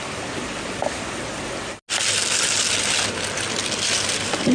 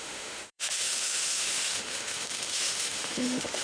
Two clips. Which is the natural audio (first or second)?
first